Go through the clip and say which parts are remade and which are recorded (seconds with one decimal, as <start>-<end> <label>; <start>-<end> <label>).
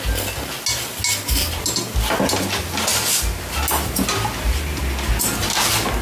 0.0-6.0 recorded